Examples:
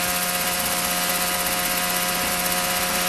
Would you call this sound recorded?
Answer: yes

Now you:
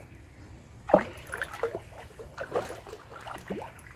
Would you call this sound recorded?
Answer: yes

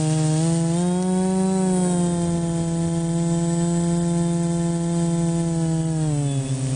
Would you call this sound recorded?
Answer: yes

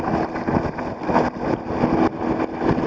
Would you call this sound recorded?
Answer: yes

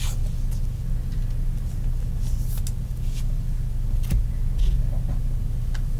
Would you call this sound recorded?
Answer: yes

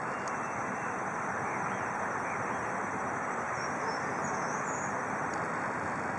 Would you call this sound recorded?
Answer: yes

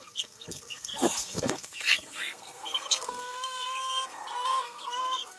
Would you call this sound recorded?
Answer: no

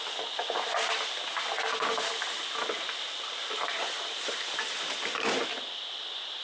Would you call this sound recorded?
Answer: yes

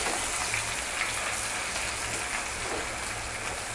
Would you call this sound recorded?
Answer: yes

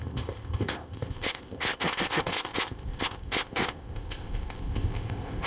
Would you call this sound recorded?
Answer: no